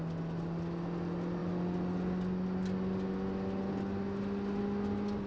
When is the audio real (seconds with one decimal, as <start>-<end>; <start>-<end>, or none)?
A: 0.0-5.3